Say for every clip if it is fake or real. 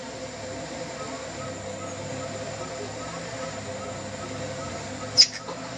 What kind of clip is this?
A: real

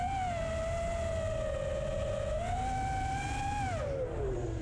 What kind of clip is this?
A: real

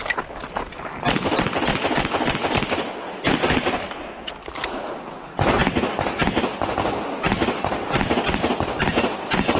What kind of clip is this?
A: real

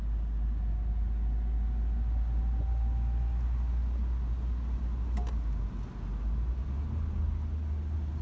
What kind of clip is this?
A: real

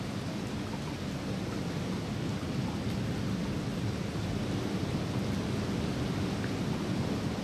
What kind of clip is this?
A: real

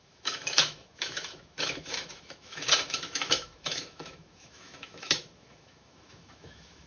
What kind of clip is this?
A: fake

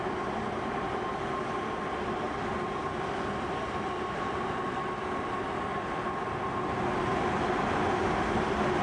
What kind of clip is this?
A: real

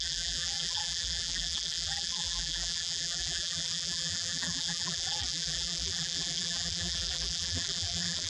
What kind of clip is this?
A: fake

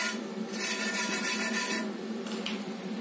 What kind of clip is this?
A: fake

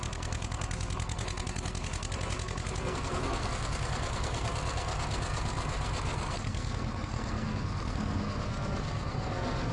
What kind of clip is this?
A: fake